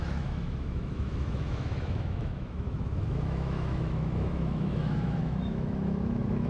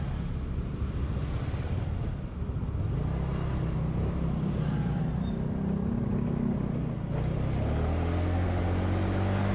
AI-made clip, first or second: first